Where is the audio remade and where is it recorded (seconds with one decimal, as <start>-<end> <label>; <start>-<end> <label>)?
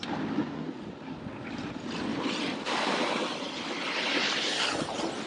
0.0-0.4 recorded; 0.4-1.0 remade; 1.0-5.3 recorded